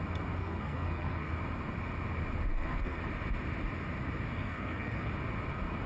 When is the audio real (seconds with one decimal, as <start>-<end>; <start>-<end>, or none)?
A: 0.0-0.4; 1.3-2.5; 3.0-4.3; 5.1-5.9